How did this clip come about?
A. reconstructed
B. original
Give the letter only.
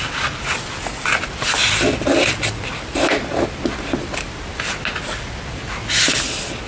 B